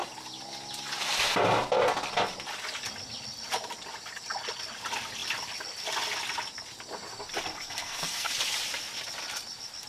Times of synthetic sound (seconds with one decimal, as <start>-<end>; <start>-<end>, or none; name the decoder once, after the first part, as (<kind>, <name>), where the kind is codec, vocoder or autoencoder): 7.5-8.3 (codec, SNAC)